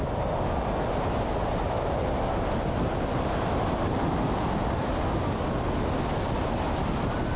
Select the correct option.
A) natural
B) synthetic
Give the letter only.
A